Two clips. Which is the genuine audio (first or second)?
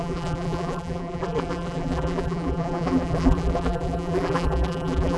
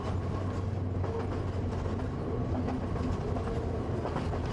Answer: second